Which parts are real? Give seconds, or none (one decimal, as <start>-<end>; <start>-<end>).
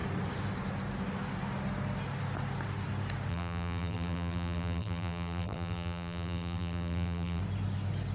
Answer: 0.0-3.3; 7.4-8.1